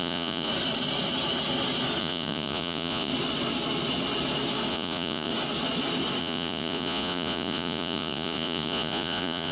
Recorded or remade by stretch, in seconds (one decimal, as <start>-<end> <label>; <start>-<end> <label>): 0.0-0.5 remade; 0.5-2.0 recorded; 2.0-3.1 remade; 3.1-4.7 recorded; 4.7-5.3 remade; 5.3-6.2 recorded; 6.2-9.5 remade